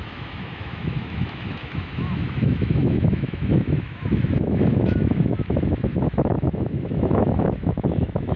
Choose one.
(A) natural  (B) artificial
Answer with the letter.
B